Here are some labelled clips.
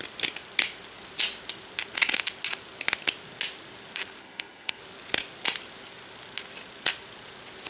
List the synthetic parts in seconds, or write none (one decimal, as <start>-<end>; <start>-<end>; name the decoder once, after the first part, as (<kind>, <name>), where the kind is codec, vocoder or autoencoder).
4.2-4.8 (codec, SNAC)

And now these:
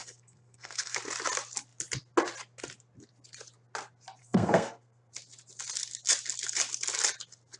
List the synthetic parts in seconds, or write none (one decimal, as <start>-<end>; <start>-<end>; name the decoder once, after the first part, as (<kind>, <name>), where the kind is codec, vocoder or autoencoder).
0.0-1.0 (codec, SNAC); 4.2-5.1

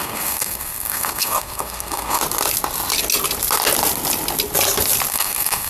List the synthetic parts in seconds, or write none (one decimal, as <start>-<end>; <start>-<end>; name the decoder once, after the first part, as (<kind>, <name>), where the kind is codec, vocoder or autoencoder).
0.0-2.2 (codec, SNAC); 5.1-5.7

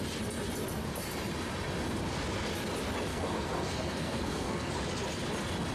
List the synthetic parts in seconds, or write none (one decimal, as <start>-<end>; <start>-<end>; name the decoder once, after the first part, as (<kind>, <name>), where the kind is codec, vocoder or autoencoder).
3.1-4.7 (codec, SNAC)

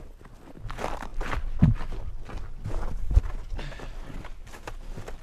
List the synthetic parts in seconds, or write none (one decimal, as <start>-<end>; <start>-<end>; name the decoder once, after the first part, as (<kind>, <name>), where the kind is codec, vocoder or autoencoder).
none

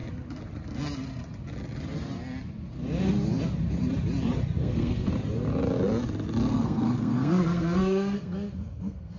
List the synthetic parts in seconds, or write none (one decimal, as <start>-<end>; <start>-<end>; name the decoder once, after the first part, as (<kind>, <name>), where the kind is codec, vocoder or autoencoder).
4.6-5.1 (codec, SNAC); 6.5-9.2

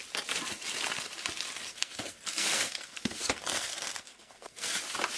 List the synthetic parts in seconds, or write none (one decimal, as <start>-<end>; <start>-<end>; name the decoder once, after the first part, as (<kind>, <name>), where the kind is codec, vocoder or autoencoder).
1.7-4.8 (codec, SNAC)

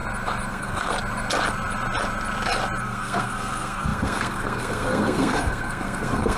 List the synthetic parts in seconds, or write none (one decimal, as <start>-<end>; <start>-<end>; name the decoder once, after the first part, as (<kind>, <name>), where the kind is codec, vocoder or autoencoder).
0.5-0.9 (codec, SNAC); 2.8-6.4